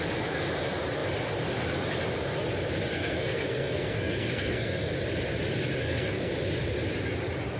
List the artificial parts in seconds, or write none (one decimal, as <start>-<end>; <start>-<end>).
2.9-4.9; 5.8-6.3